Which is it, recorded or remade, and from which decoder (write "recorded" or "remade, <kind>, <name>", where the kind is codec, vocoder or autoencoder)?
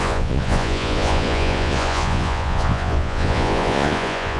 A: remade, vocoder, Vocos